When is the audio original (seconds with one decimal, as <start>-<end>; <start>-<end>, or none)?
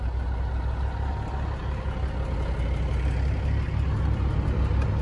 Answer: 0.0-5.0